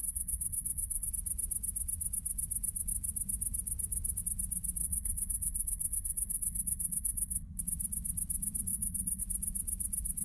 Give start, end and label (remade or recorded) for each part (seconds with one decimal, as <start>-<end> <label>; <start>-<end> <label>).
0.0-1.1 remade; 1.1-4.8 recorded; 4.8-7.6 remade; 7.6-8.7 recorded; 8.7-9.2 remade; 9.2-10.2 recorded